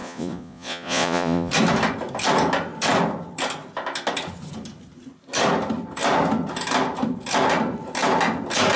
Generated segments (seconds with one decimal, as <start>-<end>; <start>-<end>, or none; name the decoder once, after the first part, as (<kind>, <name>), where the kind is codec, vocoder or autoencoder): 0.0-1.5 (vocoder, Vocos)